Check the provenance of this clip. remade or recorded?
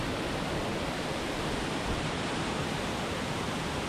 recorded